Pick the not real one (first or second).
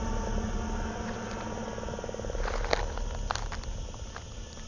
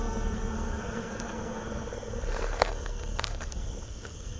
second